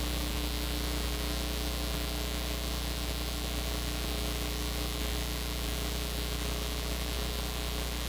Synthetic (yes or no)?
no